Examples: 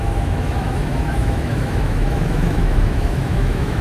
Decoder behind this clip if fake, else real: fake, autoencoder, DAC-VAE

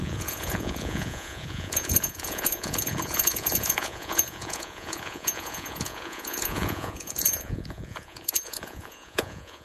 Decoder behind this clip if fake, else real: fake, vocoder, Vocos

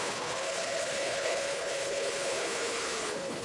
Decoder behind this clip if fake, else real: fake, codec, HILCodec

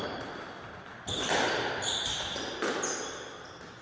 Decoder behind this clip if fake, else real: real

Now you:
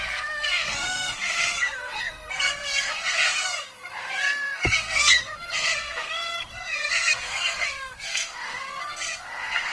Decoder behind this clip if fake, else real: fake, codec, SNAC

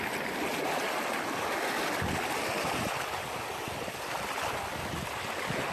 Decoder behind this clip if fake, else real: real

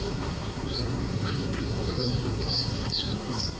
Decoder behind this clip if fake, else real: fake, codec, SNAC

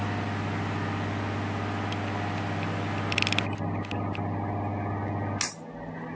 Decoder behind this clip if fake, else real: real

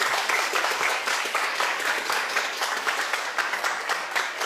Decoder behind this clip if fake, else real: fake, codec, DAC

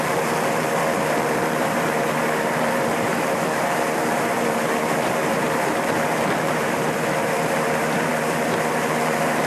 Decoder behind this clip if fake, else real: fake, vocoder, BigVGAN v2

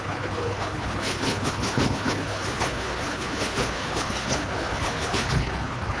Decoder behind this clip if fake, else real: fake, codec, HILCodec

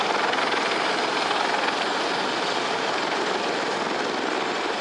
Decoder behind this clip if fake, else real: real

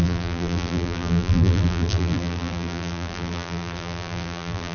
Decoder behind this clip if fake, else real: fake, vocoder, BigVGAN v2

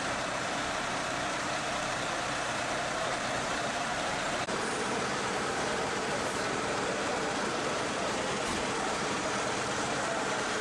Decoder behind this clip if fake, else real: fake, vocoder, BigVGAN v2